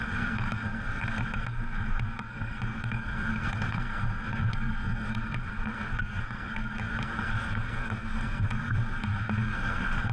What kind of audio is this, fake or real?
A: fake